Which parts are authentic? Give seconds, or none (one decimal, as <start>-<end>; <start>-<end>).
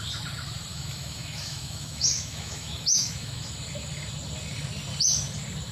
0.0-0.7; 3.4-5.7